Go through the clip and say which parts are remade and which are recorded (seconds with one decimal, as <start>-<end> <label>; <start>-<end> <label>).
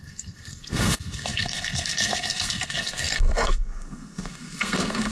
0.0-5.1 remade